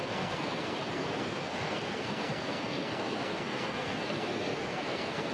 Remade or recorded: remade